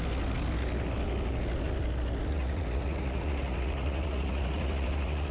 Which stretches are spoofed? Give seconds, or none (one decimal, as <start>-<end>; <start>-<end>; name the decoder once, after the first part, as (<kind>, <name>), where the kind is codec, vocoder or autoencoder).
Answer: 2.3-5.3 (vocoder, Vocos)